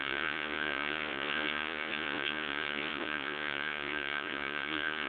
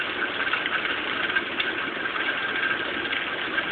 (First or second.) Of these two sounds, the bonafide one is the second